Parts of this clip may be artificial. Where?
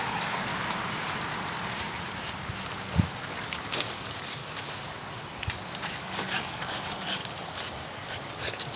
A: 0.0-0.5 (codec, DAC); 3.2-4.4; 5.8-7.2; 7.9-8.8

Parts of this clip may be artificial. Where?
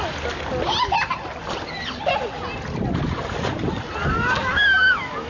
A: 4.0-5.3 (codec, DAC)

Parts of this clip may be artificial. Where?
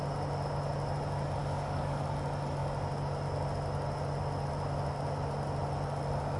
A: 1.4-2.0 (codec, DAC)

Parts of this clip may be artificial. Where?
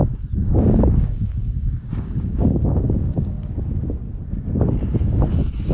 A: 0.4-3.7 (codec, DAC)